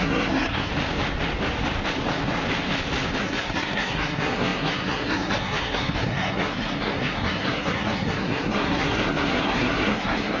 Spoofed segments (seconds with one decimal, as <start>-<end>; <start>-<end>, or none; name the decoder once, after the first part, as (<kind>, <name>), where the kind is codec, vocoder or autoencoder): 0.0-0.7 (codec, SNAC); 3.2-10.4